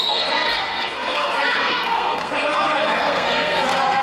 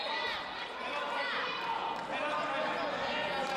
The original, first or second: second